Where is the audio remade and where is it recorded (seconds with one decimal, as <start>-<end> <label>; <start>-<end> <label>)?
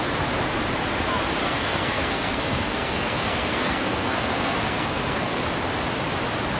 0.0-1.4 recorded; 1.4-5.4 remade; 5.4-6.6 recorded